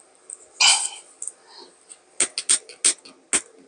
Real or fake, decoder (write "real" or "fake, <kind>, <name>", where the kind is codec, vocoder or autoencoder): real